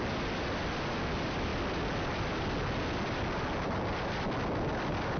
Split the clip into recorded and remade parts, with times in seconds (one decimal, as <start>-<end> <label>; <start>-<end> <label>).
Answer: 0.0-5.2 recorded